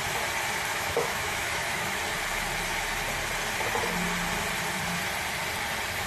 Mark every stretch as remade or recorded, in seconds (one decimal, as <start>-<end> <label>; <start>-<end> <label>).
0.0-0.7 recorded; 0.7-2.0 remade; 2.0-6.1 recorded